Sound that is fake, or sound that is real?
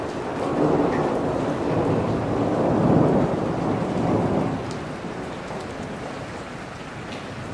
real